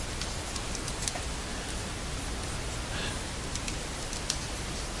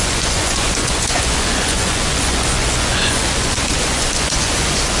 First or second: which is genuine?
first